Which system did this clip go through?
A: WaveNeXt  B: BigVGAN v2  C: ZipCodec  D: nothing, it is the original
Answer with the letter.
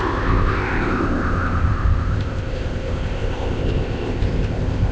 C